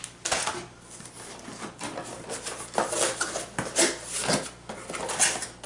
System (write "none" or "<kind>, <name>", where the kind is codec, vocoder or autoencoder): none